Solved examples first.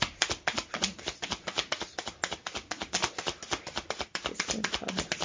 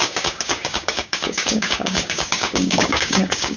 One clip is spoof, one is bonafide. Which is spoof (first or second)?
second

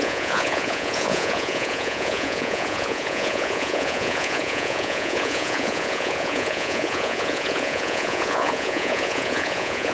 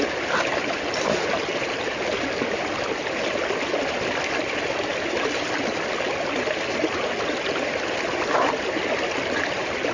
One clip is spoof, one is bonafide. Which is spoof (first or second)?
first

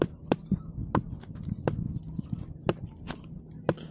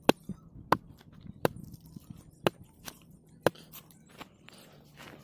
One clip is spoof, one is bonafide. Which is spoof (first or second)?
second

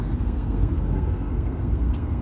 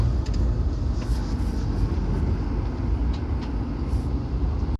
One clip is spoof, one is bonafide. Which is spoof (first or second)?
first